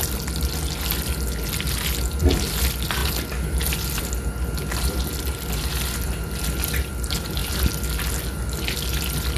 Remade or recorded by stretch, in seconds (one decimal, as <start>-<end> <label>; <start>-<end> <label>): 0.0-9.4 recorded